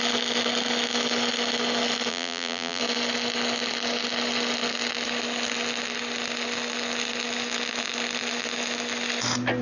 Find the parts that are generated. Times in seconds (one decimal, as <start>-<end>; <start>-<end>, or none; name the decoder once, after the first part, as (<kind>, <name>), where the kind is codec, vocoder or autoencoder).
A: 2.1-2.8 (vocoder, BigVGAN v2)